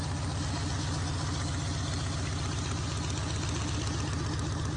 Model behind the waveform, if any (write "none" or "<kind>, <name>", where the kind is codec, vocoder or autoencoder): none